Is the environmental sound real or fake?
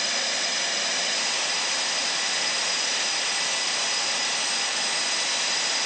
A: real